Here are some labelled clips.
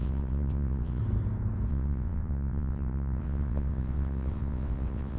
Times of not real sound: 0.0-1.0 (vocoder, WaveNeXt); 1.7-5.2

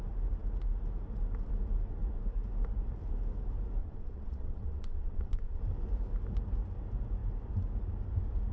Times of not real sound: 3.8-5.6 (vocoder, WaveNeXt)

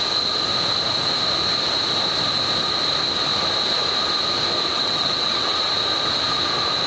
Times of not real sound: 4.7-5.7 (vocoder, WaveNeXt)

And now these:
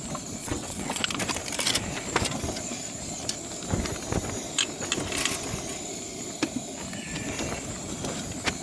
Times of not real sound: 0.4-1.0 (vocoder, WaveNeXt)